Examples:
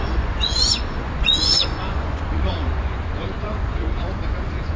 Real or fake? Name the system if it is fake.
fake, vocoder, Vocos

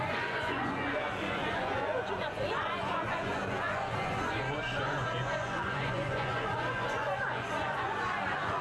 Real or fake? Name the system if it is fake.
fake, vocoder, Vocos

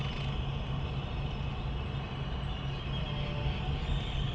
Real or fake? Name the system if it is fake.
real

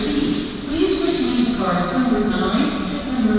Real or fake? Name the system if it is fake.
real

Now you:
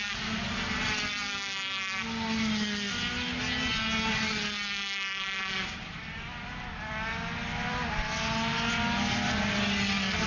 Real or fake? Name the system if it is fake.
real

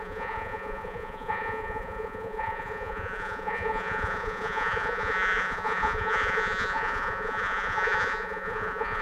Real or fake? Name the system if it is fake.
fake, vocoder, Vocos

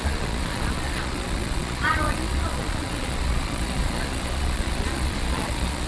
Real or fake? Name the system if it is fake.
fake, vocoder, Vocos